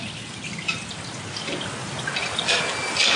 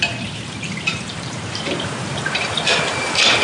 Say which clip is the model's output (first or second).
second